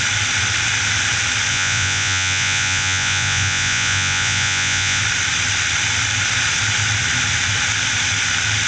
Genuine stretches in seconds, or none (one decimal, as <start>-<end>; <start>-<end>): 0.0-1.5; 5.0-8.7